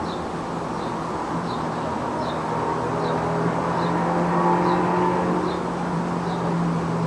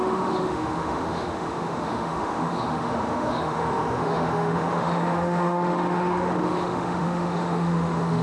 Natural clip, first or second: first